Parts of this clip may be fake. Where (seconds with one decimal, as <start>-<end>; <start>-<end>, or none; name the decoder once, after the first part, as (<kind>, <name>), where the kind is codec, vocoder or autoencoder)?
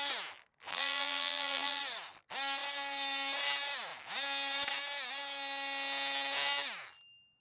0.7-1.8 (vocoder, BigVGAN v2)